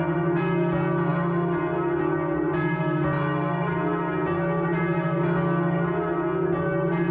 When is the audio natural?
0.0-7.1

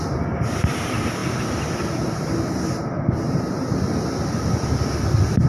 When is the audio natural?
0.0-5.5